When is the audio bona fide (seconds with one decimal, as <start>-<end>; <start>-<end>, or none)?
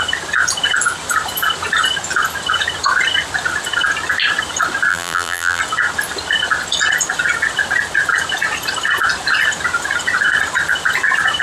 0.0-4.9; 5.6-11.4